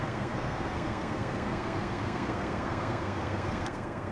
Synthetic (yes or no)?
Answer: yes